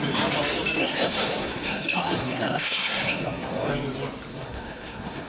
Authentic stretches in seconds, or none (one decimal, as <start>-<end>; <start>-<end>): 0.0-0.8; 3.7-4.3